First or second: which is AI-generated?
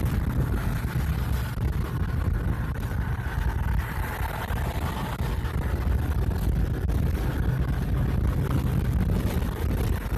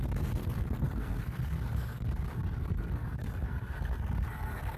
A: second